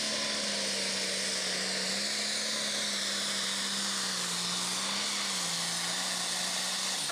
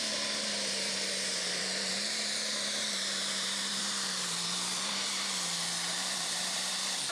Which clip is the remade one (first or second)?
second